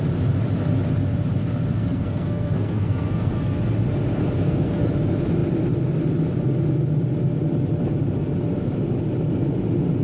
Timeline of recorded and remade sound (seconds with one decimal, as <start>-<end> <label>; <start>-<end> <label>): 0.0-1.7 recorded; 1.7-3.6 remade; 3.6-4.2 recorded; 4.2-4.9 remade; 4.9-10.0 recorded